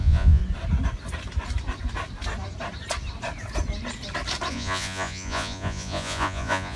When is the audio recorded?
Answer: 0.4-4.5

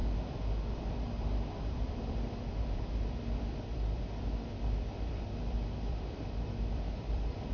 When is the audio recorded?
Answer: none